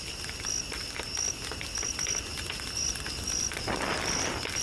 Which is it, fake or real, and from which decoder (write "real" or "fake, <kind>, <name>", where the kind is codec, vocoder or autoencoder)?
real